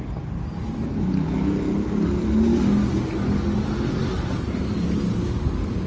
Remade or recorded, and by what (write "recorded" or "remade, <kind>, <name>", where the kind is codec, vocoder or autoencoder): recorded